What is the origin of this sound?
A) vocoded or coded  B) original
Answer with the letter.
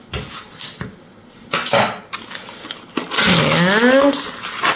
B